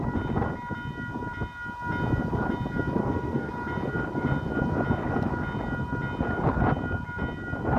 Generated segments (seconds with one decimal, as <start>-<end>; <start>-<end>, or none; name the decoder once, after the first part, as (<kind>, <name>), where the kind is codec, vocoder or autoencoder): 3.0-3.5 (codec, SNAC)